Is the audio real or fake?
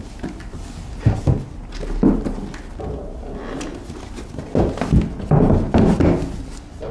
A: real